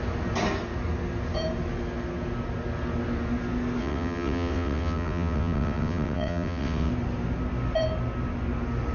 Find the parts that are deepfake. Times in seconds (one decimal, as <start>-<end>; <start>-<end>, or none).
3.8-6.9